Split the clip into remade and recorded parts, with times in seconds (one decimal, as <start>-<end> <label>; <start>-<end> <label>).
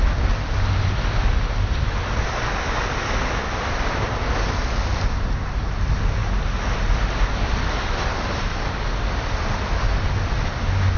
0.0-11.0 recorded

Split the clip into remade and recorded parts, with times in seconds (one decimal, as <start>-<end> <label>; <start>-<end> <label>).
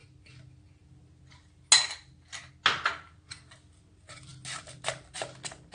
0.0-5.7 recorded